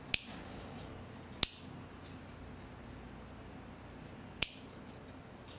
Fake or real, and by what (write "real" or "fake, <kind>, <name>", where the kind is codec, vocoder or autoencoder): real